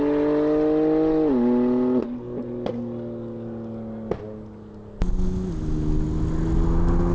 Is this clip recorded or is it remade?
recorded